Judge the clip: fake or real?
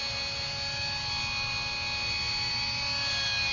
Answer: real